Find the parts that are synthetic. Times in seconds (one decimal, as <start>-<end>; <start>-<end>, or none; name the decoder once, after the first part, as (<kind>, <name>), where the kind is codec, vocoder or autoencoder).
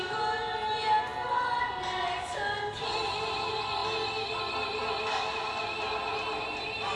none